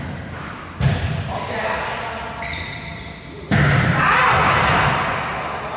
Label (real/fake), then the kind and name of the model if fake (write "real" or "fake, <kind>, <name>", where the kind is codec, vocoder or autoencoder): real